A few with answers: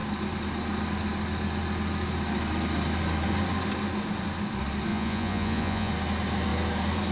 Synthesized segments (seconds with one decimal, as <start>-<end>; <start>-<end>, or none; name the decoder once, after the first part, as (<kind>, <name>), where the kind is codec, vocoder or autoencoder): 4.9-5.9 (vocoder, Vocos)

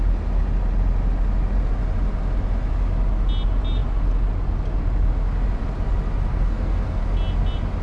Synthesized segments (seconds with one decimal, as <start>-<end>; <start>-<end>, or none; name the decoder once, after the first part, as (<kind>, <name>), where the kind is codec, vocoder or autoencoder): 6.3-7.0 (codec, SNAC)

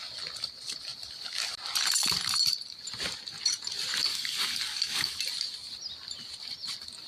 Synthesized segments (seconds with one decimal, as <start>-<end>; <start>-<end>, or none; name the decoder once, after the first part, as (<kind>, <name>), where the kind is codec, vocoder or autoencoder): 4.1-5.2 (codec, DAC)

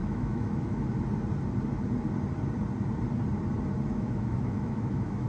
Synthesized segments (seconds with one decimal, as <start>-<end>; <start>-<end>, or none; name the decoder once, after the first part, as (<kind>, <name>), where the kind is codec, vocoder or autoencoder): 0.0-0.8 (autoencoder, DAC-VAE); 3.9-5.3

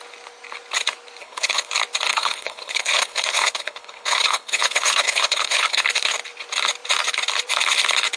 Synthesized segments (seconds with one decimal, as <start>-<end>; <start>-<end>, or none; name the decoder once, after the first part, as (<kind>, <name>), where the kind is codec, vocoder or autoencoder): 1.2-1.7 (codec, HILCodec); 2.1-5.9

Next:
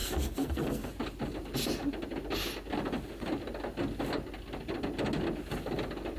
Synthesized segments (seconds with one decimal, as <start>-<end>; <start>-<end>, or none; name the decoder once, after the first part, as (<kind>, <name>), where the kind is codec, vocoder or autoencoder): 0.0-0.9 (codec, SNAC)